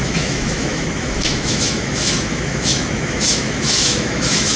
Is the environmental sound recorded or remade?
remade